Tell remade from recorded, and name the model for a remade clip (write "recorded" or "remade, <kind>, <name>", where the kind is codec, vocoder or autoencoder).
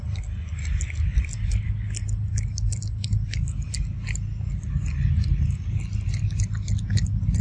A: recorded